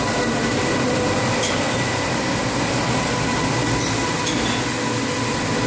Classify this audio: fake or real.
real